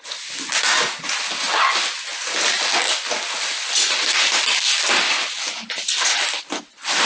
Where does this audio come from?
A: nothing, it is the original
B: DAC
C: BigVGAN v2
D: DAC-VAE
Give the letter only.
A